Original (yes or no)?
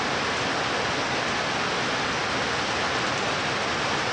yes